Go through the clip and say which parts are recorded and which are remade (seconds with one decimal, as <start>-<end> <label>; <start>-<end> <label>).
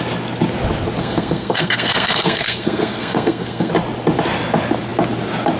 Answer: 0.0-1.0 recorded; 1.0-3.7 remade; 3.7-5.6 recorded